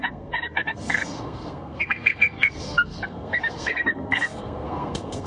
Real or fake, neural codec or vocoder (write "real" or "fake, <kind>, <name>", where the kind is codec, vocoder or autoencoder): fake, codec, SNAC